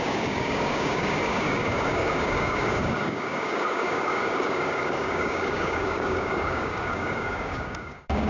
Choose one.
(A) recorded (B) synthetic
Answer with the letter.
B